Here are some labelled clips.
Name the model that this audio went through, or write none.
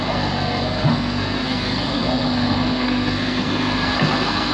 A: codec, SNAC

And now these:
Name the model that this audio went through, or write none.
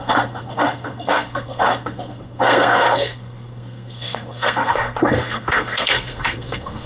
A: codec, SNAC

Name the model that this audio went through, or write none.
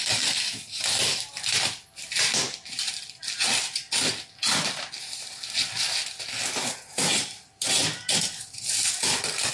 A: none